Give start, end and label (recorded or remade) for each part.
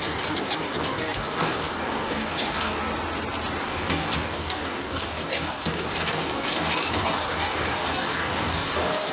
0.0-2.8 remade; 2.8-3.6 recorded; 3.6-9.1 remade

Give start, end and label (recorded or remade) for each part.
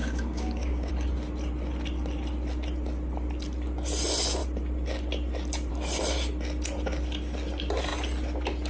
0.0-0.9 remade; 0.9-8.7 recorded